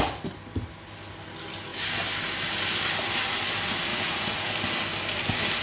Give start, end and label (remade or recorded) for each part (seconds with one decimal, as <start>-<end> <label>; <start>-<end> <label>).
0.0-3.9 recorded; 3.9-4.5 remade; 4.5-5.6 recorded